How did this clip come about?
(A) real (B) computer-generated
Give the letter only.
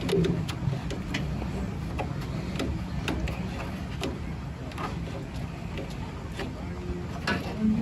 A